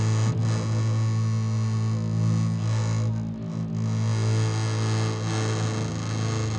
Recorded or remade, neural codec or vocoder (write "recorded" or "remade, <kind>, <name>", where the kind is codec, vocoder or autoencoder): recorded